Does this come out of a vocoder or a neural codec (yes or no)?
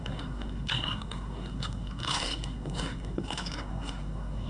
yes